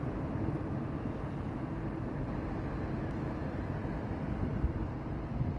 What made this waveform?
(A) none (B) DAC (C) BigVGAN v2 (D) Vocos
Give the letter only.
A